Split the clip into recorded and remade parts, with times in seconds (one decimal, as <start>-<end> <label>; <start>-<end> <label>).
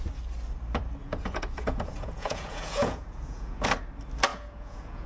0.0-1.0 recorded; 1.0-3.7 remade; 3.7-4.3 recorded; 4.3-5.1 remade